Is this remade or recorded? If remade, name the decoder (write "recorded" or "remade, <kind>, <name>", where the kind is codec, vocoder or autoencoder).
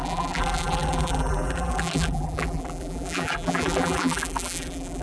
remade, vocoder, BigVGAN v2